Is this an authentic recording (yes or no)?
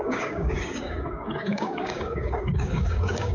no